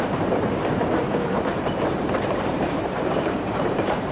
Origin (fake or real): fake